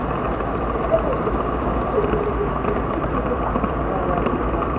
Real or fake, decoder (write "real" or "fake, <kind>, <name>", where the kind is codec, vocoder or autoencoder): real